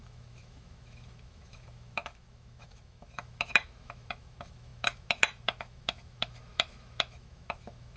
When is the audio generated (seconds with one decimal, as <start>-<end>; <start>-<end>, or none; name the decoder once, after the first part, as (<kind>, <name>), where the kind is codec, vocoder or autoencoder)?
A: 0.0-8.0 (autoencoder, DAC-VAE)